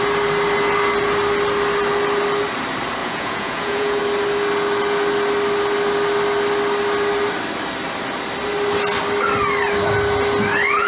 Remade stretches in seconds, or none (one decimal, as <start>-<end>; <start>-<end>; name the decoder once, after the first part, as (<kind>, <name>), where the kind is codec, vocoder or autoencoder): 3.0-4.0 (vocoder, Vocos)